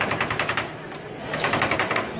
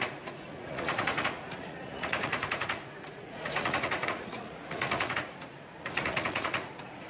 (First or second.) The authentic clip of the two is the first